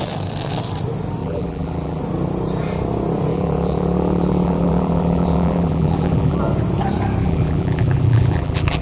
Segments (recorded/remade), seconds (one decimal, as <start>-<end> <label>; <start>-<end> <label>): 0.0-1.2 recorded; 1.2-2.0 remade; 2.0-3.3 recorded; 3.3-6.4 remade; 6.4-7.2 recorded; 7.2-8.8 remade